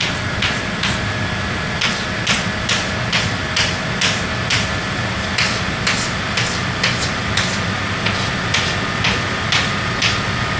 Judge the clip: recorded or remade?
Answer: recorded